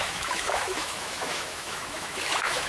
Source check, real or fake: fake